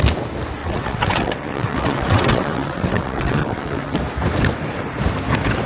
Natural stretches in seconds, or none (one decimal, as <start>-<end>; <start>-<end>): 0.0-0.6; 4.0-5.7